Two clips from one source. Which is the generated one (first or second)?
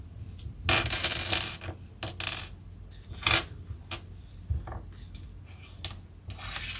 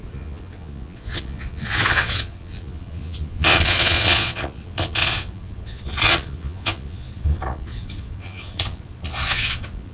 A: second